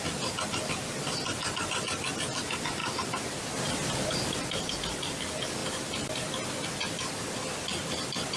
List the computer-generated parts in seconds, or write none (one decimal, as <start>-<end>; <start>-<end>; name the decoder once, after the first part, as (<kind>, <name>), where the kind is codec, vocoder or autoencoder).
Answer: none